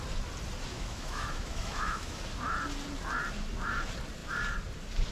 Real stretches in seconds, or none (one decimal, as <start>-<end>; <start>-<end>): 0.0-0.7; 2.2-5.1